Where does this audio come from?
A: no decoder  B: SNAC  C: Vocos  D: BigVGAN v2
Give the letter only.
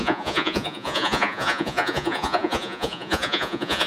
C